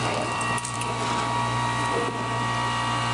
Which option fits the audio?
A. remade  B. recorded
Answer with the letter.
A